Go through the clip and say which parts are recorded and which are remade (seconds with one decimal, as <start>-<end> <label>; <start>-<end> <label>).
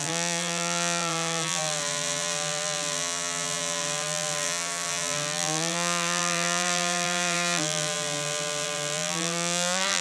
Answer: 0.0-10.0 remade